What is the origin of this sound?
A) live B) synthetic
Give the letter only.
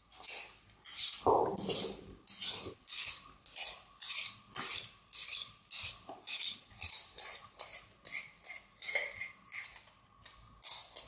A